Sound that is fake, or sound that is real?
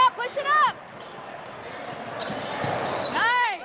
real